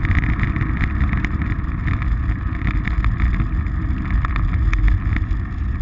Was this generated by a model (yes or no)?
no